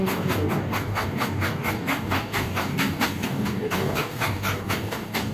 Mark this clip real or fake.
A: fake